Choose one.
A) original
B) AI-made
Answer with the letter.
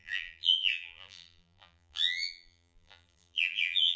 B